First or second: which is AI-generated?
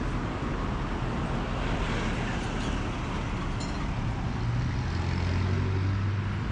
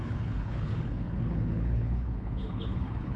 second